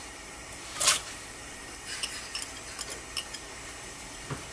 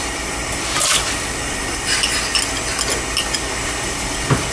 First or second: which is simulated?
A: first